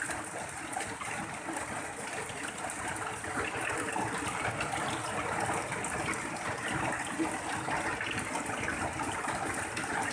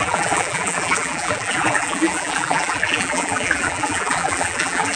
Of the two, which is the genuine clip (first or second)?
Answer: first